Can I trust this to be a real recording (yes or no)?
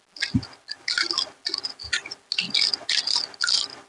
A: yes